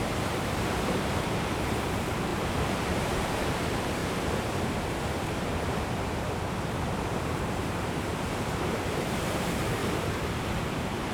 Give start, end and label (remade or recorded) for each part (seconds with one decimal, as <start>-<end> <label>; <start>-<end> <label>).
0.0-4.0 remade; 4.0-6.5 recorded; 6.5-9.8 remade; 9.8-10.4 recorded; 10.4-11.1 remade